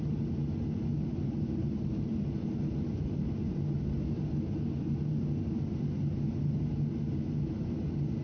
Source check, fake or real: real